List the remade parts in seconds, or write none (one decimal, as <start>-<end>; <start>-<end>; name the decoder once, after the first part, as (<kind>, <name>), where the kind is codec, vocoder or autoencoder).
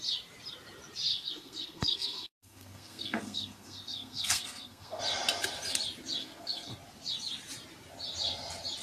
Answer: 1.1-5.0 (codec, SNAC); 6.2-6.7